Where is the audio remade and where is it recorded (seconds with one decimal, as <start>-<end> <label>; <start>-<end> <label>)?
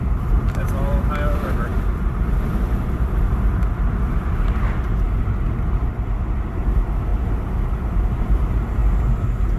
0.0-7.1 remade; 7.1-7.9 recorded; 7.9-8.8 remade; 8.8-9.6 recorded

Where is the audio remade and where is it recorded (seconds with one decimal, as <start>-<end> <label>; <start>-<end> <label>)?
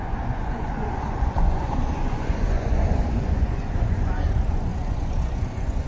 0.0-5.9 remade